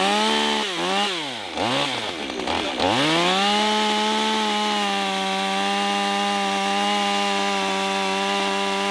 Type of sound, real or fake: real